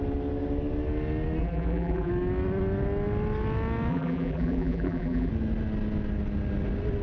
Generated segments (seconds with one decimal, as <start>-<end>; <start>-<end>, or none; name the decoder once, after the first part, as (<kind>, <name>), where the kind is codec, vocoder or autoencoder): 1.4-2.1 (vocoder, BigVGAN v2); 3.9-5.3